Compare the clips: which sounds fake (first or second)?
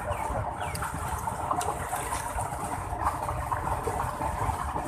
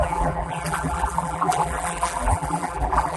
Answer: second